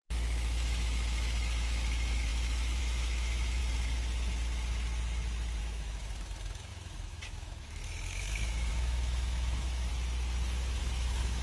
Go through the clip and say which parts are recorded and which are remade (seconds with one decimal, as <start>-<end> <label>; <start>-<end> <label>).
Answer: 0.0-3.6 remade; 3.6-5.6 recorded; 5.6-9.9 remade; 9.9-10.8 recorded; 10.8-11.4 remade